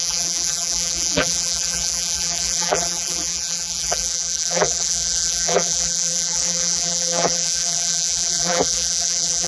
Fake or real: fake